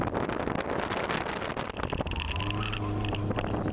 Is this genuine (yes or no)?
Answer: yes